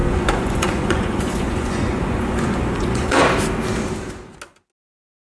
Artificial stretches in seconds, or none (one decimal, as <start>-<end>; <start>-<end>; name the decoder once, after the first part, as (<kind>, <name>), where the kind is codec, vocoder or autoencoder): 0.0-3.2 (vocoder, Vocos)